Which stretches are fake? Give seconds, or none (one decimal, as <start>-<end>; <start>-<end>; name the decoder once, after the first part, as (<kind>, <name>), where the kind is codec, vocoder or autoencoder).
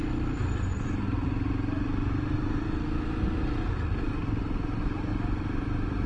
none